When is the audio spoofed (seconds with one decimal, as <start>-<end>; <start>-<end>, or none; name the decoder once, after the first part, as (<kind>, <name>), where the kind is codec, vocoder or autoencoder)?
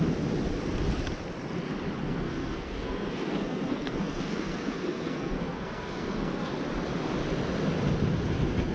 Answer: 2.0-6.5 (codec, SNAC)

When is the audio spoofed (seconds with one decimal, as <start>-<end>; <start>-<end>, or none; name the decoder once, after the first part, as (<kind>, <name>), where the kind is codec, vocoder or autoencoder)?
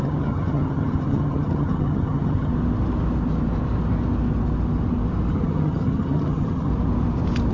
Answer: 0.0-2.5 (vocoder, HiFi-GAN); 5.3-6.7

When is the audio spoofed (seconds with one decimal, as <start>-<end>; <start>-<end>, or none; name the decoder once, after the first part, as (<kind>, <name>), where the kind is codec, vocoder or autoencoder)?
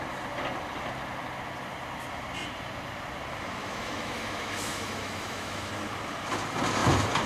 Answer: 3.6-5.7 (autoencoder, DAC-VAE)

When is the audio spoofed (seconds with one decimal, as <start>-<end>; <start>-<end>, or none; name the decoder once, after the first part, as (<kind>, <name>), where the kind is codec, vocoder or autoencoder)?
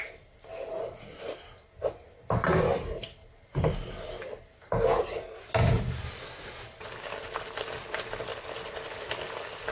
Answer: none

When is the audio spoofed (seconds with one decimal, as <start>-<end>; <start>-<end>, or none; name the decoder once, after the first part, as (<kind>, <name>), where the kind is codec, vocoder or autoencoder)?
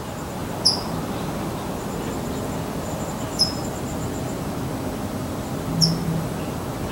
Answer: none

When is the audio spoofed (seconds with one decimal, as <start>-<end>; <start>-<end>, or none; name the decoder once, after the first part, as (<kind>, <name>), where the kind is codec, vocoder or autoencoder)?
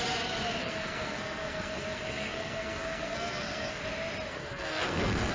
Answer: 0.6-3.8 (codec, SNAC); 4.3-5.3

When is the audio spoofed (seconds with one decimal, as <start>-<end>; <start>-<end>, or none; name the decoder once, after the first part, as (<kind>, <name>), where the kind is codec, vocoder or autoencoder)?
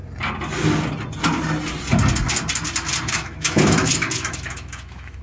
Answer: 3.1-5.2 (autoencoder, DAC-VAE)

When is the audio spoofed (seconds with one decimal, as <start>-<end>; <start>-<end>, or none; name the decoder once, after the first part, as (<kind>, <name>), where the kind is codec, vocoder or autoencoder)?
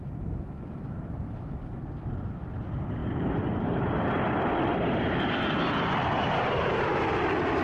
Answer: 0.0-1.8 (autoencoder, DAC-VAE)